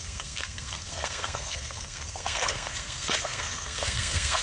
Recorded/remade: remade